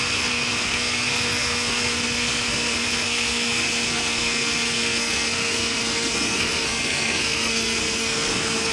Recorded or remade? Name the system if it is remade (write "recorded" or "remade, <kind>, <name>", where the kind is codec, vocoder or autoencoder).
remade, codec, SNAC